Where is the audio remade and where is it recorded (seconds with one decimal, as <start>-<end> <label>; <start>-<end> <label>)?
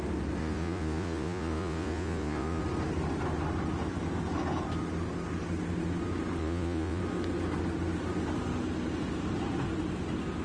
0.0-0.4 recorded; 0.4-2.6 remade; 2.6-6.4 recorded; 6.4-7.0 remade; 7.0-10.4 recorded